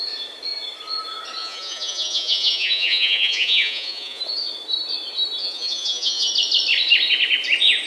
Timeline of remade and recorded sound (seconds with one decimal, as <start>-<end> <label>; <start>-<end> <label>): 0.0-1.4 recorded; 1.4-4.2 remade; 4.2-5.4 recorded; 5.4-6.3 remade; 6.3-7.9 recorded